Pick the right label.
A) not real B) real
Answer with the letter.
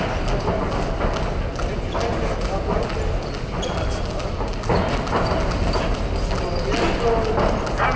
B